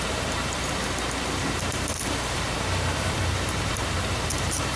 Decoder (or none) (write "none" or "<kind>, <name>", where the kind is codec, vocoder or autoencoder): vocoder, BigVGAN v2